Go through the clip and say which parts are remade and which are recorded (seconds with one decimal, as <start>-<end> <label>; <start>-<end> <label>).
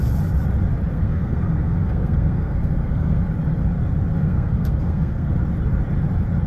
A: 0.0-0.9 recorded; 0.9-3.2 remade; 3.2-4.2 recorded; 4.2-5.3 remade; 5.3-6.5 recorded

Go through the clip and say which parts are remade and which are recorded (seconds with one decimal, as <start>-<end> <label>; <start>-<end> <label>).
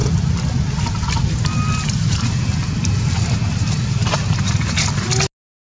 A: 0.0-5.7 recorded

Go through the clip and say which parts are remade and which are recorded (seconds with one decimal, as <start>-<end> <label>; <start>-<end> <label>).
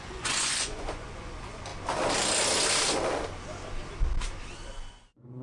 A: 0.0-1.7 remade; 1.7-4.9 recorded; 4.9-5.4 remade